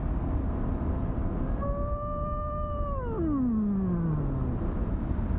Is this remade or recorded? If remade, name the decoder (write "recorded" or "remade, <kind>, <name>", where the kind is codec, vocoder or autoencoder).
recorded